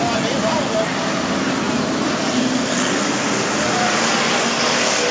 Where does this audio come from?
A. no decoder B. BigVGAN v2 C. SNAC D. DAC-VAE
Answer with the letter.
A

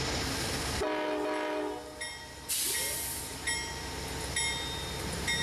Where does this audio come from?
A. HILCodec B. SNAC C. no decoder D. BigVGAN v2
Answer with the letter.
C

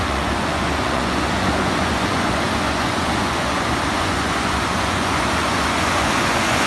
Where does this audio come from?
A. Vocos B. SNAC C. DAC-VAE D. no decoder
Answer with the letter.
A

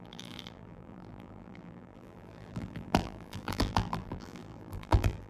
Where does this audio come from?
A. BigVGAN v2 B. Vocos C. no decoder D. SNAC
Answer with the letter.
A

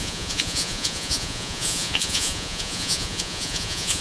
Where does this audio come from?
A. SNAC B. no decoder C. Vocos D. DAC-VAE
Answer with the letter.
C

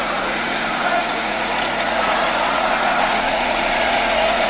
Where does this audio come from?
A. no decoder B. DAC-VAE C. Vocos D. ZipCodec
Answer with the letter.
C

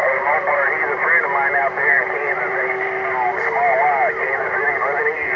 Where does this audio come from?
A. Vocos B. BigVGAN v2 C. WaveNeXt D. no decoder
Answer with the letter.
B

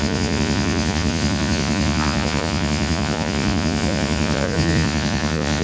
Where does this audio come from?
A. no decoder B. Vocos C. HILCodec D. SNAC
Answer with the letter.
B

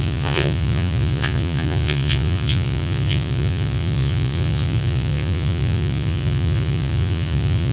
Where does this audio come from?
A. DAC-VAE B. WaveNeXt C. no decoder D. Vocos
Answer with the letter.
D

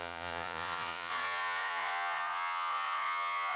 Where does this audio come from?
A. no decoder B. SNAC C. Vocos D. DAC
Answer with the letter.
C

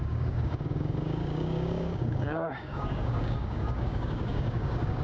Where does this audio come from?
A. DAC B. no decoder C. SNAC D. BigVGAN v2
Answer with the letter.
A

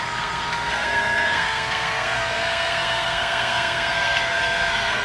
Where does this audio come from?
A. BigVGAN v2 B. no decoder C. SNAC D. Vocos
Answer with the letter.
C